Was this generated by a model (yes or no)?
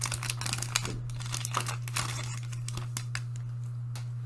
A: no